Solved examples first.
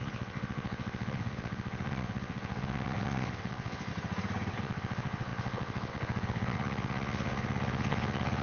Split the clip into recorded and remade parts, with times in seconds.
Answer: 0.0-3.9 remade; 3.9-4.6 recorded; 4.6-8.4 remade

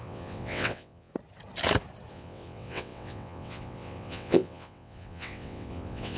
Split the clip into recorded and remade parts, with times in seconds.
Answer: 0.0-1.1 remade; 1.1-2.1 recorded; 2.1-6.2 remade

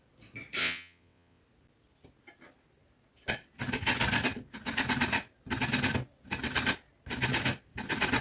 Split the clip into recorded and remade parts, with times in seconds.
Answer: 0.0-0.6 recorded; 0.6-1.4 remade; 1.4-8.2 recorded

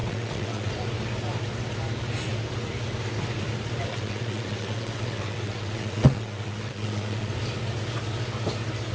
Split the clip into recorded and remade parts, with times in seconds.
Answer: 0.0-0.7 remade; 0.7-3.9 recorded; 3.9-7.3 remade; 7.3-8.9 recorded

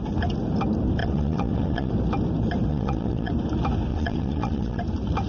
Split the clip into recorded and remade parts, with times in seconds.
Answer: 0.0-1.0 recorded; 1.0-1.9 remade; 1.9-2.7 recorded; 2.7-3.3 remade; 3.3-3.9 recorded; 3.9-4.8 remade; 4.8-5.3 recorded